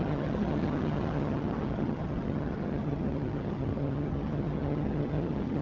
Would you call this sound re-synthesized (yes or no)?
yes